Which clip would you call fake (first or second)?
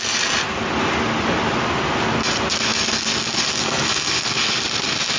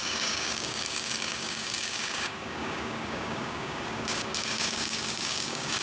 second